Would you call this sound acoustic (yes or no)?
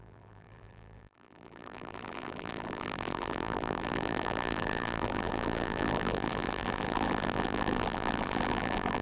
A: no